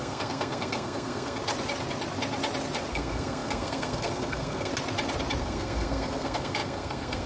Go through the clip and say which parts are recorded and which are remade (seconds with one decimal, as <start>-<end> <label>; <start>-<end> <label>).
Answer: 0.0-1.4 remade; 1.4-2.9 recorded; 2.9-4.7 remade; 4.7-5.4 recorded; 5.4-7.3 remade